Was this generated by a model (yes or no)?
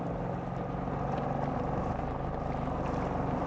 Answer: no